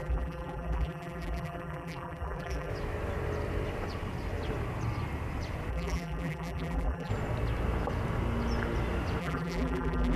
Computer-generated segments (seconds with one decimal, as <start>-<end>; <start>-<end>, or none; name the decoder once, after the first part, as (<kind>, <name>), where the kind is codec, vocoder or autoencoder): 0.0-2.7 (vocoder, BigVGAN v2); 5.7-7.1; 9.2-10.2